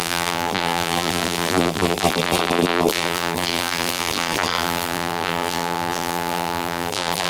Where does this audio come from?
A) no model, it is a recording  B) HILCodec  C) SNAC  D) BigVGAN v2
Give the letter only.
D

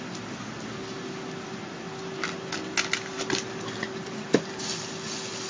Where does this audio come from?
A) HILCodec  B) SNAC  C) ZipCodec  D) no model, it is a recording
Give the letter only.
D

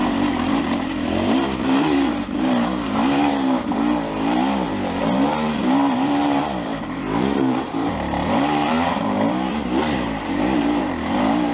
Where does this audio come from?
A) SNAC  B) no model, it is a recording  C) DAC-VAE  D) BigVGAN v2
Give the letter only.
D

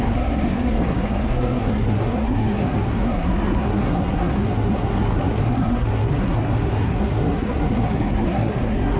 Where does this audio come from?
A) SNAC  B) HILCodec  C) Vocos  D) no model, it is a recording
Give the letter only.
A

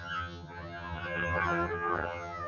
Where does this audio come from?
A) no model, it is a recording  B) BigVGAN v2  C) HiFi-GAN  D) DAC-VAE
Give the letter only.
C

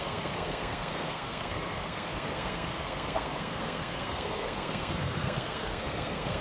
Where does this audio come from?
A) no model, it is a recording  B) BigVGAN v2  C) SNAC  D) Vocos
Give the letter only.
C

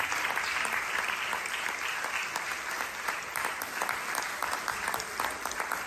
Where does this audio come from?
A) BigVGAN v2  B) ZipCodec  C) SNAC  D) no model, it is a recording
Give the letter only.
D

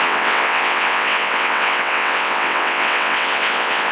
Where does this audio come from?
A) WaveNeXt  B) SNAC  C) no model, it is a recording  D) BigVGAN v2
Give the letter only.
A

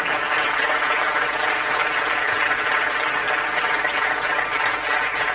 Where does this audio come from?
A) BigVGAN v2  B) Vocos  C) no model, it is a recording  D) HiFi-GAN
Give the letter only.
C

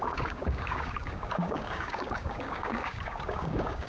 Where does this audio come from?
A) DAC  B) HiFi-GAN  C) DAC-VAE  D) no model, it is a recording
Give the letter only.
A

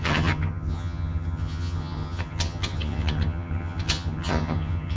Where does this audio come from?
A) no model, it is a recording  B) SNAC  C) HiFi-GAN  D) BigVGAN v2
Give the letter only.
C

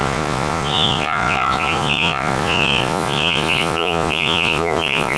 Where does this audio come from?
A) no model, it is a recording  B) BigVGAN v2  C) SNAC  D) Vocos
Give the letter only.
D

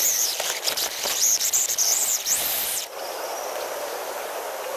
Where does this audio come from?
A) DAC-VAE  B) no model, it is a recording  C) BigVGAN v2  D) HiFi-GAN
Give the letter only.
B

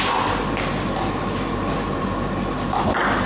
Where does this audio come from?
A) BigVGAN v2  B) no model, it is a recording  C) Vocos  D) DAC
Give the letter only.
B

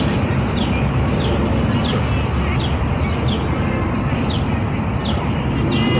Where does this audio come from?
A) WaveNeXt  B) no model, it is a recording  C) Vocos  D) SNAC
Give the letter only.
B